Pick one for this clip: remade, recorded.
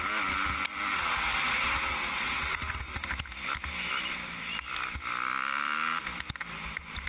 recorded